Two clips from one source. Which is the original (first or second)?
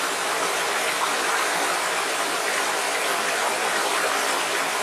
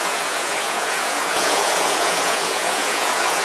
first